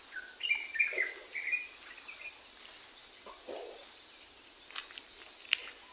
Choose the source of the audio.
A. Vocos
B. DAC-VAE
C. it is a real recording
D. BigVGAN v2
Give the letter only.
C